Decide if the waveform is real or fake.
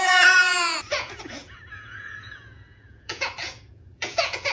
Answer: fake